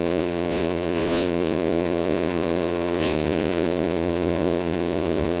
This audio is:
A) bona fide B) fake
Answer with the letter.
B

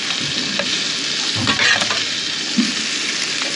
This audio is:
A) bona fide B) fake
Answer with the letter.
A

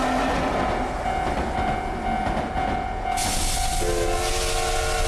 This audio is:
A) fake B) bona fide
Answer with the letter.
B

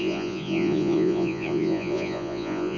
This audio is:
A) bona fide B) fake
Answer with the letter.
B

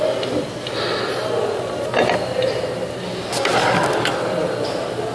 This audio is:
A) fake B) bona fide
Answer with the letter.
B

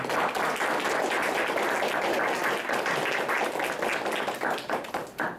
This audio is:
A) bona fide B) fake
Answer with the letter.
A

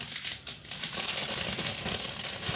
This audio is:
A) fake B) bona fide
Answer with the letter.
B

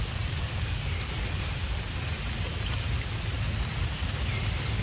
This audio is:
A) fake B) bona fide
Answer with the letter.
B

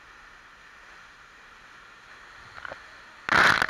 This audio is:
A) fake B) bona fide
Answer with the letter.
B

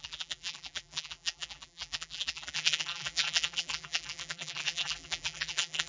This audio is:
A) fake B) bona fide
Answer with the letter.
A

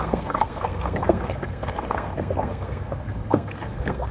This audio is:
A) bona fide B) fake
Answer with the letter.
B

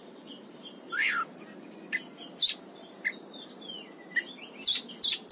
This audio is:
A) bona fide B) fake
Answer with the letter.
A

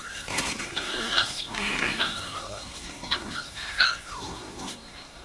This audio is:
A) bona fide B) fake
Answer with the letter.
B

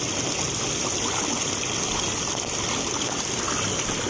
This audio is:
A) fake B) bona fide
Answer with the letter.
B